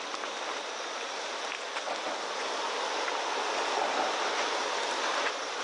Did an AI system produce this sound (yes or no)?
no